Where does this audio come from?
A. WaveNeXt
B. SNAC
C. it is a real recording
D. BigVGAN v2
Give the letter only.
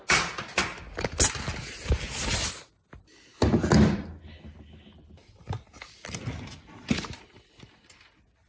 C